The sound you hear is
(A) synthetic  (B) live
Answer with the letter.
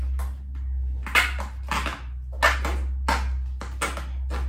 B